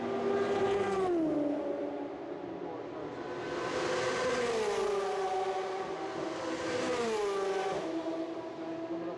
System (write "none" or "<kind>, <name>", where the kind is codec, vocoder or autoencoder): none